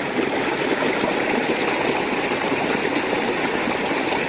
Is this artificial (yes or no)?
no